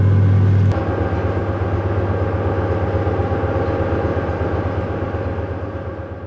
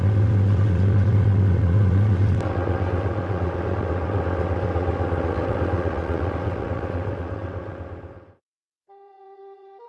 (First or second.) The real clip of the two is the first